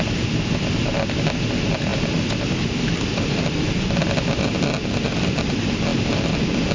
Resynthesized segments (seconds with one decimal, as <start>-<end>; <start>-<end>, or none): 1.9-4.6